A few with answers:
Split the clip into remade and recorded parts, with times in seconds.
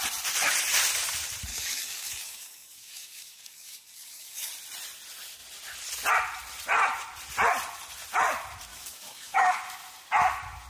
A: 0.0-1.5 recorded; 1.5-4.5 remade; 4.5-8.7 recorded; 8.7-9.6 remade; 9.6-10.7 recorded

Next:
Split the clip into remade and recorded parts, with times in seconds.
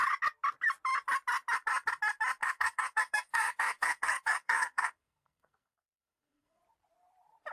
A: 0.0-2.4 recorded; 2.4-6.6 remade; 6.6-7.5 recorded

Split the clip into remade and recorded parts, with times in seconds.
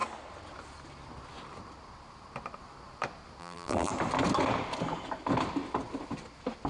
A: 0.0-3.4 recorded; 3.4-3.9 remade; 3.9-6.7 recorded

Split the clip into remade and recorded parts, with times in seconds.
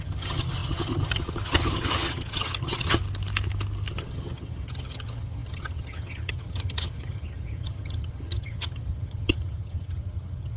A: 0.0-3.0 remade; 3.0-3.9 recorded; 3.9-10.6 remade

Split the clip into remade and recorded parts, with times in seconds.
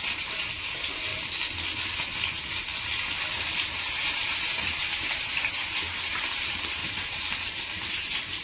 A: 0.0-1.1 remade; 1.1-3.4 recorded; 3.4-8.4 remade